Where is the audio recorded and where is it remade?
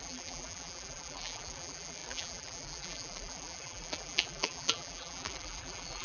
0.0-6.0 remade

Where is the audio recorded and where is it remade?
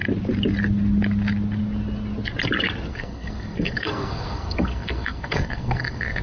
0.0-2.9 recorded; 2.9-6.2 remade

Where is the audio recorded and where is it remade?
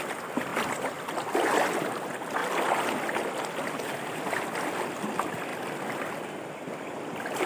0.0-0.5 recorded; 0.5-1.7 remade; 1.7-7.5 recorded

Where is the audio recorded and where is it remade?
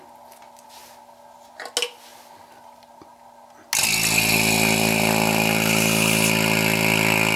0.0-7.4 recorded